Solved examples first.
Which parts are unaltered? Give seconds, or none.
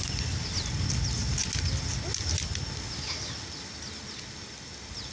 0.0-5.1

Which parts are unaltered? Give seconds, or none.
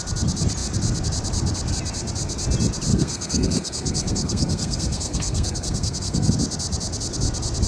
0.0-2.9; 6.3-7.7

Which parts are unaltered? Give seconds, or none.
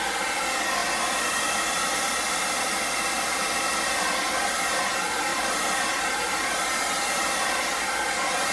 0.0-5.3; 7.3-8.5